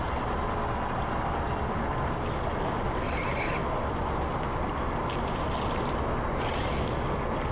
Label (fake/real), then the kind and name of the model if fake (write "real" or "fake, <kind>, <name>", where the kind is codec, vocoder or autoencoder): real